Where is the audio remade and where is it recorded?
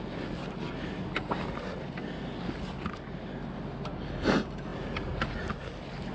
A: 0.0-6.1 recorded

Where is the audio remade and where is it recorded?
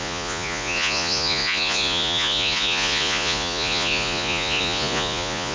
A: 0.0-5.5 remade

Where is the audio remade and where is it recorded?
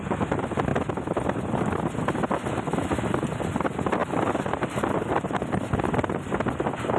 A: 0.0-7.0 recorded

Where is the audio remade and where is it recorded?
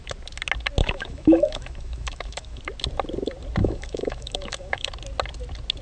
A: 0.0-0.8 recorded; 0.8-2.6 remade; 2.6-3.6 recorded; 3.6-4.9 remade; 4.9-5.8 recorded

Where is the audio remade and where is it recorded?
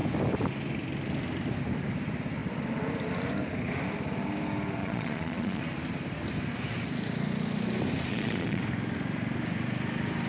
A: 0.0-4.8 recorded; 4.8-5.6 remade; 5.6-8.1 recorded; 8.1-8.6 remade; 8.6-10.3 recorded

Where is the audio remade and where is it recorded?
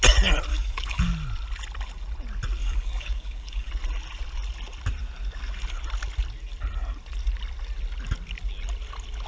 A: 0.0-0.5 recorded; 0.5-1.0 remade; 1.0-2.6 recorded; 2.6-3.7 remade; 3.7-9.3 recorded